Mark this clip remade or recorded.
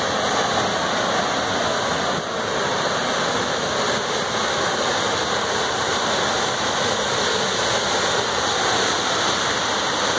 recorded